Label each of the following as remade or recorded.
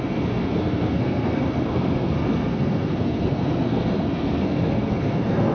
remade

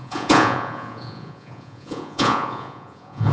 remade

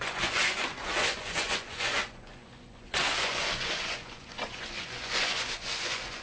remade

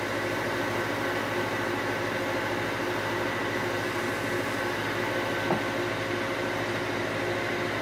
recorded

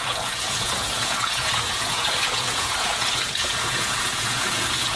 remade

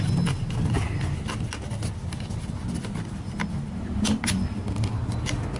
recorded